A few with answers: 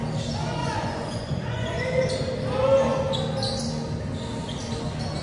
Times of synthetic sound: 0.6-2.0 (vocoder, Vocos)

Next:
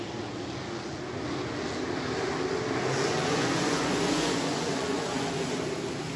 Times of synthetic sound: 3.1-5.6 (vocoder, Vocos)

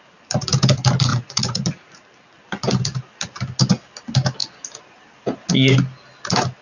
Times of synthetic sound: 1.1-2.0 (vocoder, Vocos)

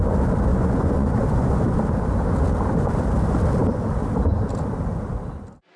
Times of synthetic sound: 0.5-1.6 (vocoder, Vocos)

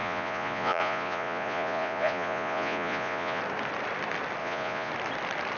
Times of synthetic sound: 0.0-3.4 (vocoder, Vocos); 4.4-4.9